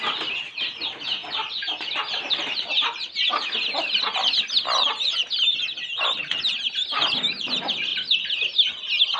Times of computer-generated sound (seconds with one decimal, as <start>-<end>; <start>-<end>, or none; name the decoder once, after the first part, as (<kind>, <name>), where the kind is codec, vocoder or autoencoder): none